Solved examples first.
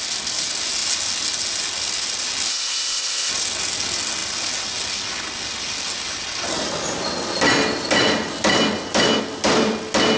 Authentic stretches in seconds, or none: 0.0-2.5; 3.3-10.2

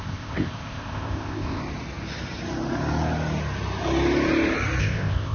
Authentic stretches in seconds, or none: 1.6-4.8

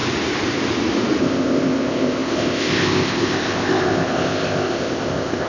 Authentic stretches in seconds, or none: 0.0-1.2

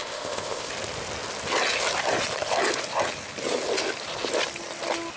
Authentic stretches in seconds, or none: 0.7-5.2

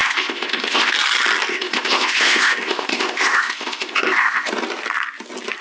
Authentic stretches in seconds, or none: 0.9-1.5; 4.5-5.6